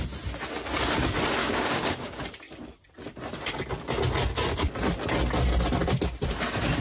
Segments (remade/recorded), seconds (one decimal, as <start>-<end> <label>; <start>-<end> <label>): 0.0-1.4 recorded; 1.4-2.2 remade; 2.2-6.8 recorded